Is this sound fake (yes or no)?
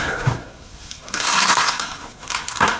yes